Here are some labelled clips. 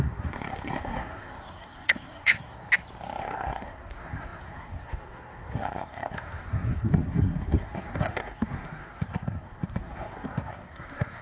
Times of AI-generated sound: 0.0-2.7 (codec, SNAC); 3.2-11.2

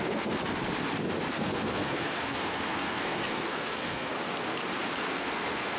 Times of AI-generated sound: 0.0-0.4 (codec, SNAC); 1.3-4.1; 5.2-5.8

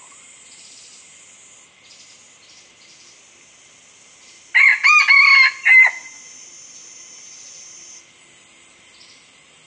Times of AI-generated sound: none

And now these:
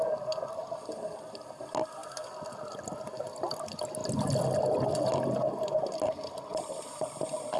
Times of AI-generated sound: none

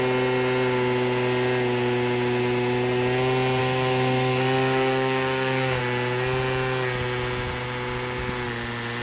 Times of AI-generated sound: 3.6-5.8 (codec, SNAC)